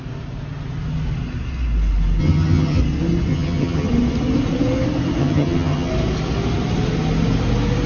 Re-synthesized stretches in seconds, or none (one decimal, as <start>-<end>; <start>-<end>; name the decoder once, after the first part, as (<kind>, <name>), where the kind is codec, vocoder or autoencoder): 2.2-2.8 (vocoder, HiFi-GAN); 3.3-3.9; 5.2-5.9